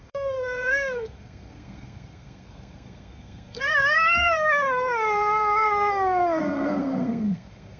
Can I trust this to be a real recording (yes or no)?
no